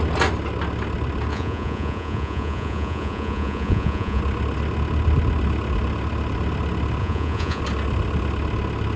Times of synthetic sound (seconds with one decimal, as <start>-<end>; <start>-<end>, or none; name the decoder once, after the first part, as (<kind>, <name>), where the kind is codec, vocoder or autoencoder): 1.3-4.2 (vocoder, Vocos); 7.0-7.6